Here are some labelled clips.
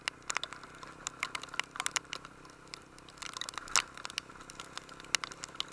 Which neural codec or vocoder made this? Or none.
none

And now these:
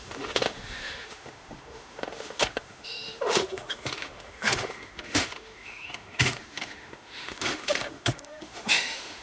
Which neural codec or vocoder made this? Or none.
autoencoder, DAC-VAE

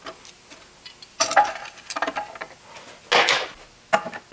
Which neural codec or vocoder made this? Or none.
none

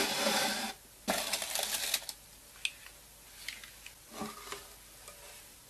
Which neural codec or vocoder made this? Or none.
none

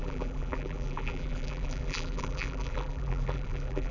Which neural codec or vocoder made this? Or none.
vocoder, BigVGAN v2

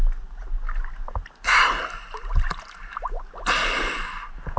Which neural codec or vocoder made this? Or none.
none